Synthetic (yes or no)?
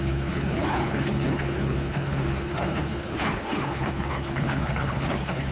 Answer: yes